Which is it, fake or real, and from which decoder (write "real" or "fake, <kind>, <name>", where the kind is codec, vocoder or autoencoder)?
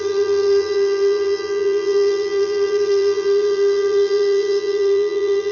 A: fake, vocoder, BigVGAN v2